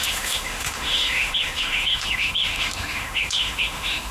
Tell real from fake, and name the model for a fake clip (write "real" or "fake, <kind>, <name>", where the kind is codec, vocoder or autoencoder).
fake, autoencoder, DAC-VAE